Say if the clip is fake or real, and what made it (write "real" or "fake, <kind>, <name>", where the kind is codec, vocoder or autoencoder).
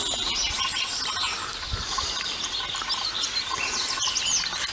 real